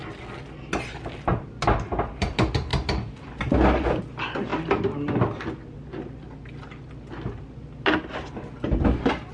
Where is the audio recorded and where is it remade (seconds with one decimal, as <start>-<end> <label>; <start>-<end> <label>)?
0.0-9.3 recorded